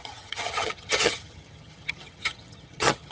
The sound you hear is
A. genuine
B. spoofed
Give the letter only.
B